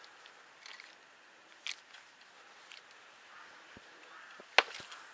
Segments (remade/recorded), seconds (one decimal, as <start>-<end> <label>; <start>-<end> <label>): 0.0-5.1 recorded